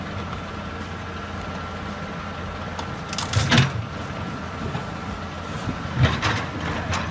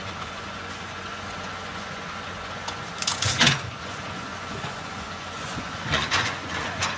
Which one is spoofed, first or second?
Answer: second